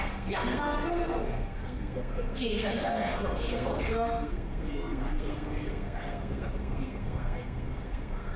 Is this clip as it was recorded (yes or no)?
no